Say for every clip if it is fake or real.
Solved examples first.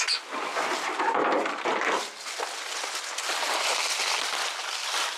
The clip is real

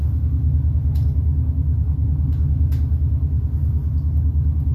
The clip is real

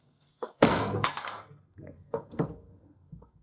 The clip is fake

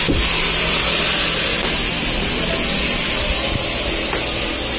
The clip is real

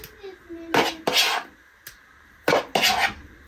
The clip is real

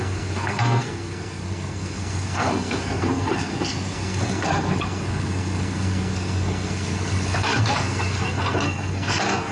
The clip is fake